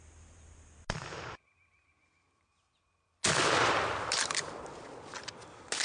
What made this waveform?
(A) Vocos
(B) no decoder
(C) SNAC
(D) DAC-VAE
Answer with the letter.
B